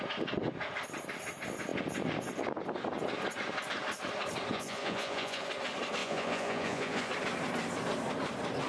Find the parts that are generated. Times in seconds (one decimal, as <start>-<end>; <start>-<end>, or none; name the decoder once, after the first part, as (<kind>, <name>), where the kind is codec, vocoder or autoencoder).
4.5-5.5 (vocoder, Vocos); 6.0-7.1